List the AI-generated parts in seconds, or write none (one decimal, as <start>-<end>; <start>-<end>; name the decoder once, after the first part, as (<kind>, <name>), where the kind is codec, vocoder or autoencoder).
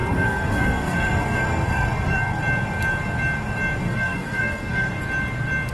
0.0-2.4 (codec, SNAC); 3.8-4.9